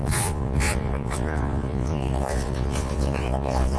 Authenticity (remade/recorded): remade